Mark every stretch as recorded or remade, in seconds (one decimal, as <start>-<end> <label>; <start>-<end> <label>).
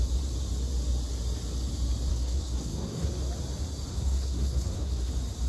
0.0-2.1 recorded; 2.1-3.1 remade; 3.1-3.9 recorded; 3.9-5.1 remade; 5.1-5.5 recorded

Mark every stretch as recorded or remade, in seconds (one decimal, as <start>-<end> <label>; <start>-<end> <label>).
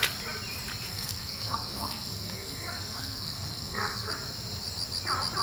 0.0-0.9 recorded; 0.9-4.1 remade; 4.1-5.4 recorded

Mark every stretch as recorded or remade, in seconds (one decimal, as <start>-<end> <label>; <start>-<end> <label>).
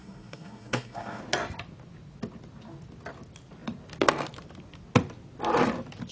0.0-1.2 remade; 1.2-6.1 recorded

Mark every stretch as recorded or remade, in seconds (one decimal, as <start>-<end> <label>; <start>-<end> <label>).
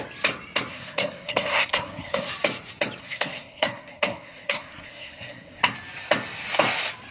0.0-0.7 recorded; 0.7-2.3 remade; 2.3-3.0 recorded; 3.0-5.6 remade; 5.6-7.1 recorded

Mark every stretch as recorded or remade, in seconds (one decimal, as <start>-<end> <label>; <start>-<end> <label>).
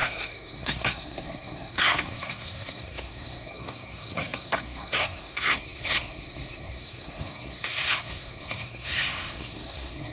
0.0-10.1 remade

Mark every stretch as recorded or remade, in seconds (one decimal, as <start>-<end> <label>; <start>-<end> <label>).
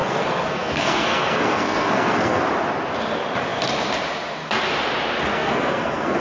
0.0-2.4 remade; 2.4-5.3 recorded; 5.3-6.2 remade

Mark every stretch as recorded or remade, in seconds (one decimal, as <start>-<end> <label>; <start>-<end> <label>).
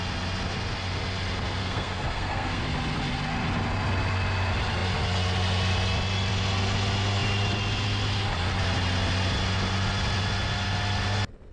0.0-1.6 recorded; 1.6-2.6 remade; 2.6-11.5 recorded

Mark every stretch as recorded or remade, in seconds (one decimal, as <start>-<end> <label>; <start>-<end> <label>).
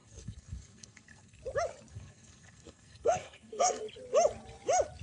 0.0-1.4 remade; 1.4-1.9 recorded; 1.9-3.8 remade; 3.8-5.0 recorded